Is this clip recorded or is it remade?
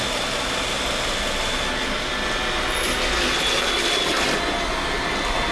recorded